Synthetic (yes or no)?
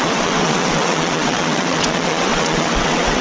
yes